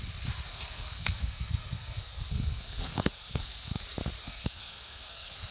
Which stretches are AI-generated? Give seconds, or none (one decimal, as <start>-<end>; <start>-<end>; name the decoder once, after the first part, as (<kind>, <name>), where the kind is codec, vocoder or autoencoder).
0.5-3.8 (codec, SNAC); 4.2-5.5